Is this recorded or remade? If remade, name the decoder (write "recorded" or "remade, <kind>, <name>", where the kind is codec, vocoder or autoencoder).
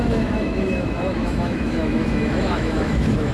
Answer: remade, autoencoder, DAC-VAE